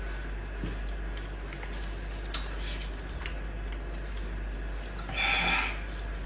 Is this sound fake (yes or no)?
no